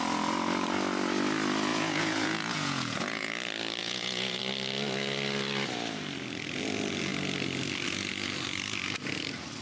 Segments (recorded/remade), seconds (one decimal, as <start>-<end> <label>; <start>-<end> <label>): 0.0-1.7 recorded; 1.7-3.3 remade; 3.3-3.8 recorded; 3.8-4.4 remade; 4.4-9.6 recorded